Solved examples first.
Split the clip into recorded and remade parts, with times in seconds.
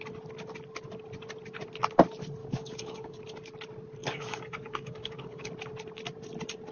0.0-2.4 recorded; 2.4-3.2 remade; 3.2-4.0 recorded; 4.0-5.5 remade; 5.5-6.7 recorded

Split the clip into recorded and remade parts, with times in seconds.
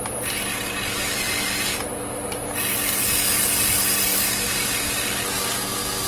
0.0-6.1 recorded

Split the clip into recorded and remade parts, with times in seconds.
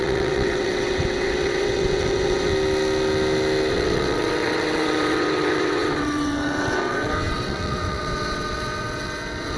0.0-2.5 remade; 2.5-3.7 recorded; 3.7-9.6 remade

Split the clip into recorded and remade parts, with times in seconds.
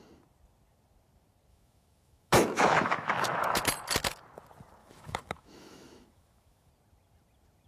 0.0-1.5 recorded; 1.5-3.6 remade; 3.6-4.8 recorded; 4.8-6.7 remade; 6.7-7.7 recorded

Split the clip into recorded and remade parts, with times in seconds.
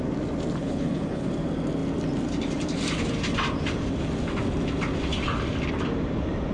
0.0-0.6 recorded; 0.6-1.3 remade; 1.3-6.5 recorded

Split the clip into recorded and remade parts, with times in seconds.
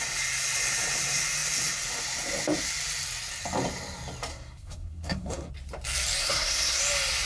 0.0-4.3 recorded; 4.3-5.5 remade; 5.5-6.2 recorded; 6.2-6.8 remade; 6.8-7.3 recorded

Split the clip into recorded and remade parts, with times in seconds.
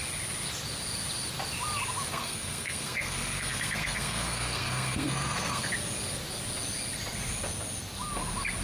0.0-2.1 recorded; 2.1-5.7 remade; 5.7-8.6 recorded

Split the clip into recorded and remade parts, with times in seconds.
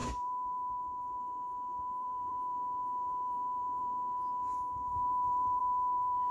0.0-6.3 remade